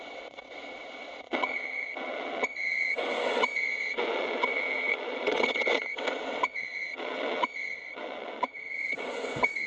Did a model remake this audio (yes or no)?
yes